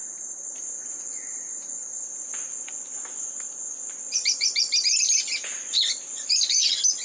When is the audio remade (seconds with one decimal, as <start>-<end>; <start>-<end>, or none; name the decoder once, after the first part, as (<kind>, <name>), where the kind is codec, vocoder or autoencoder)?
none